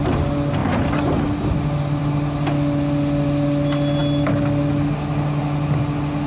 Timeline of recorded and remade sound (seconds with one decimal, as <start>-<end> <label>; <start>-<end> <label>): 0.0-6.3 recorded